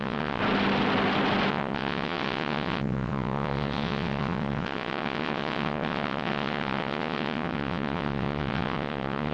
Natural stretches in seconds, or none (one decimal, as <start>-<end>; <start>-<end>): 0.4-1.5